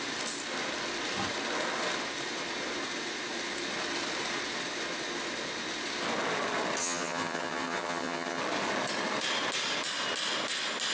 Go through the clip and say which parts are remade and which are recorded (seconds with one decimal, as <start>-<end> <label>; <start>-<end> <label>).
0.0-6.8 recorded; 6.8-8.4 remade; 8.4-10.9 recorded